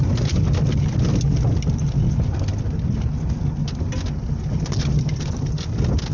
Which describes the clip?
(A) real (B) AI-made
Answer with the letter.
A